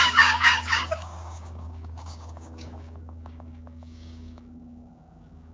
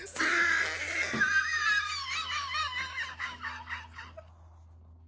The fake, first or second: first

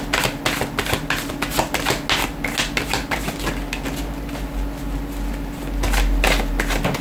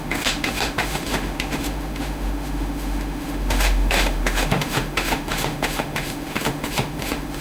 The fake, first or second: second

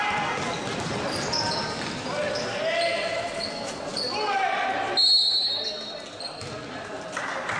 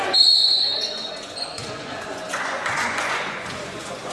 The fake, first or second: second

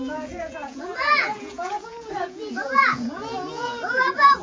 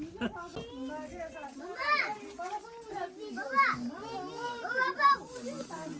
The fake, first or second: first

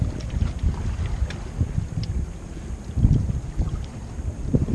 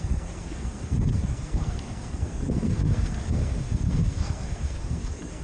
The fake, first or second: second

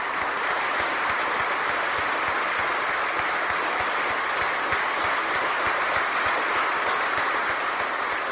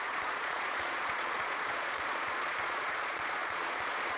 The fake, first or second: second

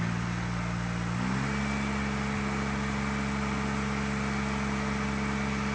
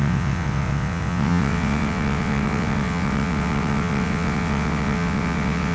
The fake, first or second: second